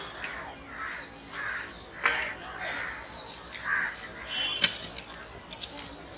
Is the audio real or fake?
real